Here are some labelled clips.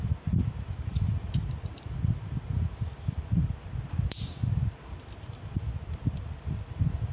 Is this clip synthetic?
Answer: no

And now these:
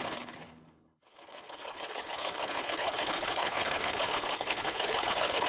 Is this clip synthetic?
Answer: yes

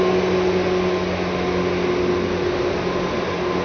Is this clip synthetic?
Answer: no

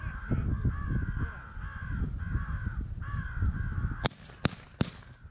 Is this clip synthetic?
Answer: no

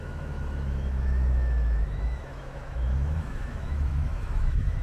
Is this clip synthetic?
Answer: yes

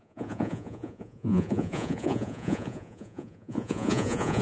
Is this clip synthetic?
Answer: yes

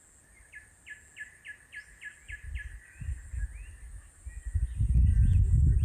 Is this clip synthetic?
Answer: no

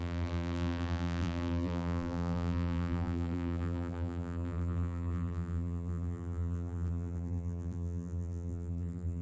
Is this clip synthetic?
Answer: yes